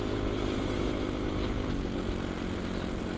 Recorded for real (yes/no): yes